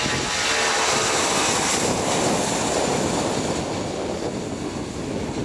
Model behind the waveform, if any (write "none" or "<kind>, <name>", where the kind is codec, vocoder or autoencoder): none